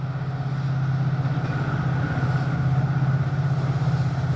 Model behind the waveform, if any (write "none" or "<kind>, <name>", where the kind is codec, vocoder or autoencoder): none